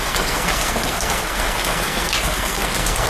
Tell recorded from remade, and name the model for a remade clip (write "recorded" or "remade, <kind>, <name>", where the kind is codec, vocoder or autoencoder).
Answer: remade, codec, SNAC